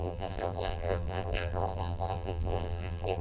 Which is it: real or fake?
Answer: fake